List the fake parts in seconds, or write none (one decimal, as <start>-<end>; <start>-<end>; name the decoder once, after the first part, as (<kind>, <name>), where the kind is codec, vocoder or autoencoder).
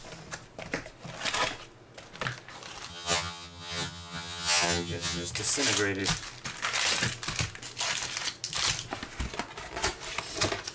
2.9-5.3 (vocoder, HiFi-GAN)